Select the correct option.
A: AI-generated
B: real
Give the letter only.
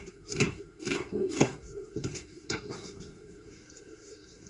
A